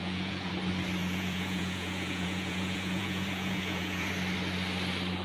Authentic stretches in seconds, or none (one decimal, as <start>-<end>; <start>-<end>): 0.5-1.0; 4.1-5.2